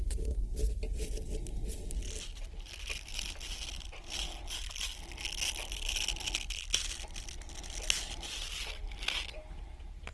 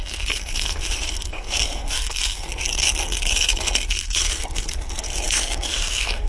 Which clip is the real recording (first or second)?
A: first